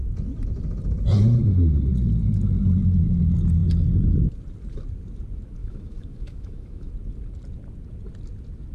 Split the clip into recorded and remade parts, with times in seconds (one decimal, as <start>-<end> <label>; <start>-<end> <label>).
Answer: 0.0-5.6 recorded; 5.6-6.9 remade; 6.9-8.7 recorded